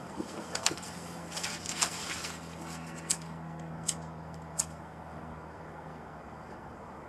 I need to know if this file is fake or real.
fake